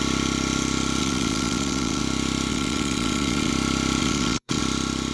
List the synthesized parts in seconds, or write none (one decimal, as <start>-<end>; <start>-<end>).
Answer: 1.0-2.0; 2.5-3.5; 4.0-4.6

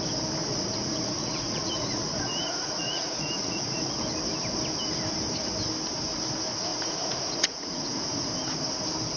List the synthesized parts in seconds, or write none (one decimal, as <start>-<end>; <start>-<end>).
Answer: 0.4-4.0; 6.7-8.3

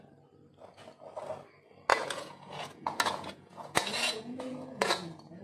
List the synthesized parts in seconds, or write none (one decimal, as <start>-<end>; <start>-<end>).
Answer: 1.9-5.4

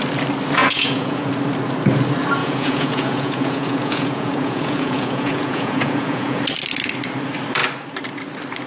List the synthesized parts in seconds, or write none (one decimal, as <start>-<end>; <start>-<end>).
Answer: 0.6-1.3; 2.4-6.4

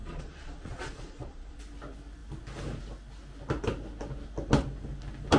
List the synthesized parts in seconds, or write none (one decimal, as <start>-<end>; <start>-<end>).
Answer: 0.0-1.6